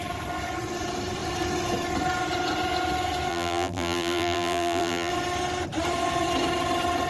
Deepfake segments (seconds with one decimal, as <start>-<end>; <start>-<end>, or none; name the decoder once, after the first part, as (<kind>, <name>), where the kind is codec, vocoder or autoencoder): 3.3-5.1 (vocoder, BigVGAN v2)